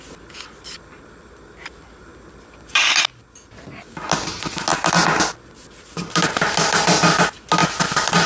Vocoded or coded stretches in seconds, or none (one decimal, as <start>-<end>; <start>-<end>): 7.6-8.3